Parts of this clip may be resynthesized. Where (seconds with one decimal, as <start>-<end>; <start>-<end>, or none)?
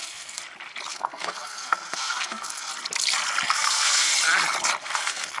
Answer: 0.0-0.4; 0.9-2.7; 3.5-4.1; 4.8-5.4